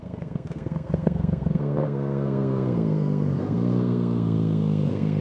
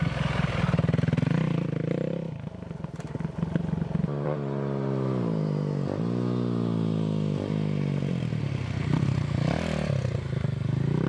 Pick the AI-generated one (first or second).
first